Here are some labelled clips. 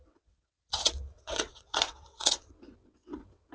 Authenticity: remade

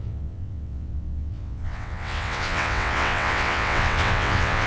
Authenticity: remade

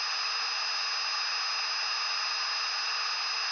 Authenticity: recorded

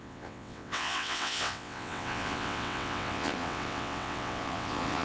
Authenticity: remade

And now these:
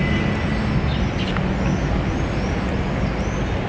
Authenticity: recorded